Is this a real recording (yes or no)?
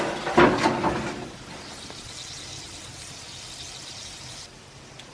yes